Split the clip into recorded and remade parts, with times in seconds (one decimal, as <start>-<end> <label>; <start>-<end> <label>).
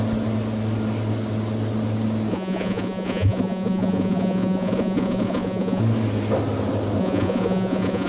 0.0-2.3 recorded; 2.3-5.8 remade; 5.8-7.0 recorded; 7.0-8.1 remade